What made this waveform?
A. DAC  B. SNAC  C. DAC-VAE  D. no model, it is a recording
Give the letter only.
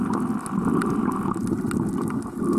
D